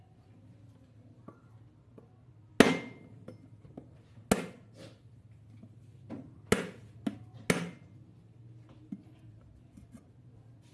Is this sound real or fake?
real